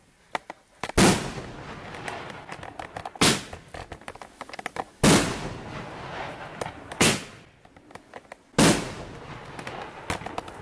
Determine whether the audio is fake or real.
real